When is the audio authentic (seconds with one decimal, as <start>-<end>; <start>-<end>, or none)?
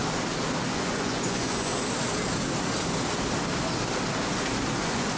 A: 0.0-0.7; 1.7-4.8